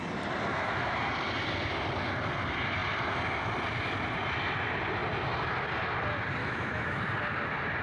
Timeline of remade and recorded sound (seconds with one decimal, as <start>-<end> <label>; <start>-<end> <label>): 0.0-0.5 recorded; 0.5-1.1 remade; 1.1-6.4 recorded; 6.4-7.0 remade; 7.0-7.8 recorded